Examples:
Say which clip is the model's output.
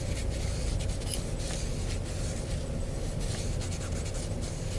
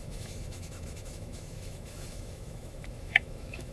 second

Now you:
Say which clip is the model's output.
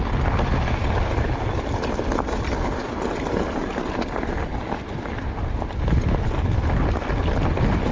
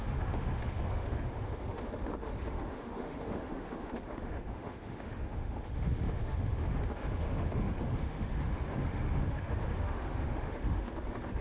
second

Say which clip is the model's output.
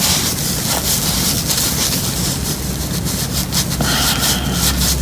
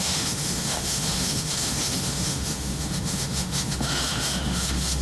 second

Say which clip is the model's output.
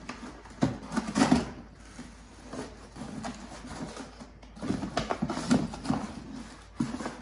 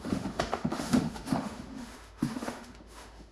second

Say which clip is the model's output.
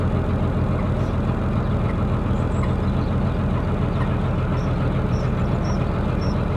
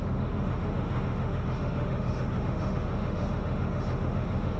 second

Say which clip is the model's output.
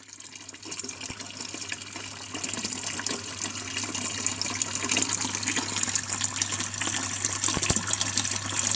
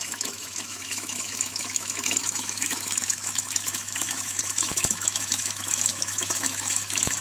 second